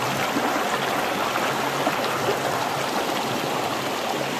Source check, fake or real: real